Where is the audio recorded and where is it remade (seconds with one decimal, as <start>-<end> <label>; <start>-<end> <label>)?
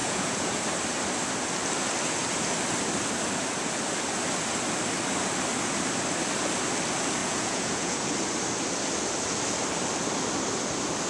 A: 0.0-0.6 remade; 0.6-7.2 recorded; 7.2-8.1 remade; 8.1-11.1 recorded